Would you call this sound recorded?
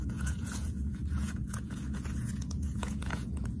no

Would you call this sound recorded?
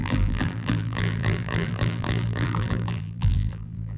no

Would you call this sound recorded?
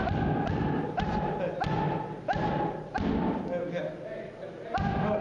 yes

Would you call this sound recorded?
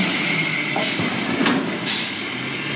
yes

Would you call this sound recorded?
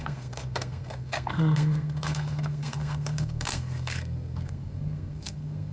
no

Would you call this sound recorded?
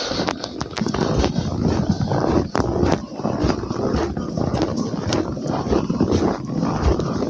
yes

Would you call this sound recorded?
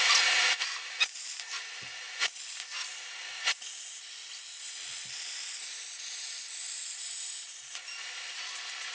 yes